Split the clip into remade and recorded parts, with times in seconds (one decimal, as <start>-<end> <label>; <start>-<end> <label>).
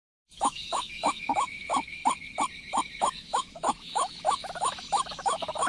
0.0-2.0 remade; 2.0-3.0 recorded; 3.0-5.7 remade